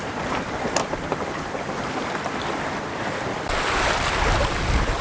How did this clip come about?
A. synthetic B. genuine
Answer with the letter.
A